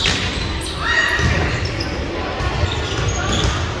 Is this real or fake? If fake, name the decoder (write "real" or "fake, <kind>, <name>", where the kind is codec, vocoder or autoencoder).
real